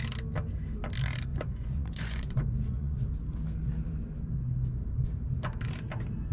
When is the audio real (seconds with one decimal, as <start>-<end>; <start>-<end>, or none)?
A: 0.0-1.3; 3.0-6.3